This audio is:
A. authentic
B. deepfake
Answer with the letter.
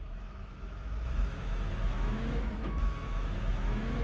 B